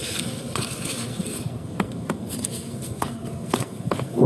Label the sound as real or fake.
fake